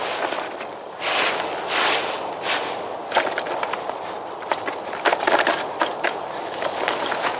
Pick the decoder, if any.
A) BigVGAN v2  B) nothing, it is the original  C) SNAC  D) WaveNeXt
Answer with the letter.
B